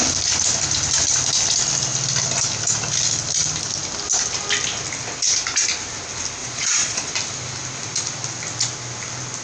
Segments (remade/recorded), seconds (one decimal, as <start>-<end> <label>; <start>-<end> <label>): 0.0-6.4 recorded; 6.4-7.1 remade; 7.1-9.4 recorded